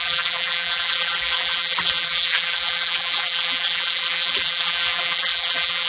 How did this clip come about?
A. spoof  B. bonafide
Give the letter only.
A